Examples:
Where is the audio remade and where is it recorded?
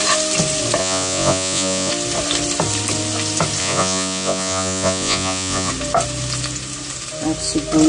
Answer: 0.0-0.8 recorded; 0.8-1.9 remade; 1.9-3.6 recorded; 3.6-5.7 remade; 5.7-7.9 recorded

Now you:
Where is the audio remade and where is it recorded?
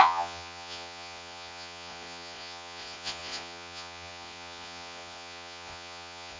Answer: 0.0-6.4 remade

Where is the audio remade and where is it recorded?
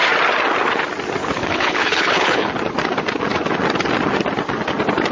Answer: 0.0-1.2 recorded; 1.2-2.5 remade; 2.5-5.1 recorded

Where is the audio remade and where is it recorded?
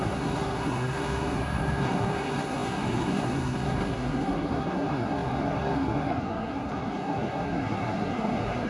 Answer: 0.0-8.7 remade